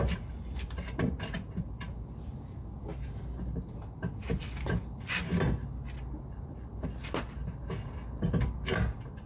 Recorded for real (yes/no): yes